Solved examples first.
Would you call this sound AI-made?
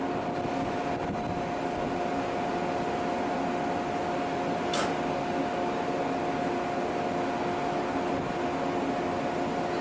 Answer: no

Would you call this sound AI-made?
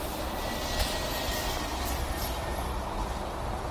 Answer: no